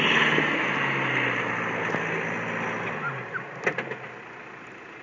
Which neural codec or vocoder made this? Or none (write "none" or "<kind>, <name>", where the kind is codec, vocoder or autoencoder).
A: none